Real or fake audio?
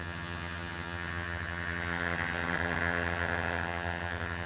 fake